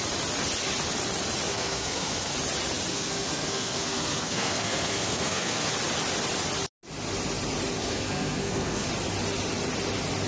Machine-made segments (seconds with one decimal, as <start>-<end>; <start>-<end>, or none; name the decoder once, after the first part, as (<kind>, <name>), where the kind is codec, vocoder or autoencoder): 1.5-2.3 (codec, SNAC); 2.9-5.7; 7.8-8.9